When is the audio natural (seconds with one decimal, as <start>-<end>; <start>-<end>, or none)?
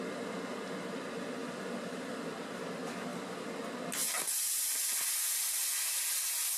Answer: 0.0-1.4; 2.3-3.1; 3.6-6.6